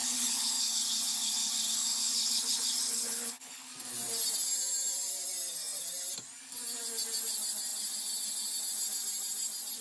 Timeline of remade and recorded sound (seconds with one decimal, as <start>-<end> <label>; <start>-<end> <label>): 0.0-3.7 remade; 3.7-9.8 recorded